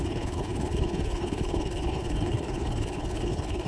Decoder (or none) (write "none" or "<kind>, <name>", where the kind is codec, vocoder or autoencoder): codec, HILCodec